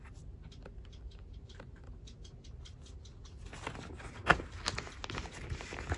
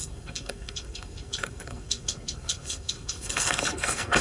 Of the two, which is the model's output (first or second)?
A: second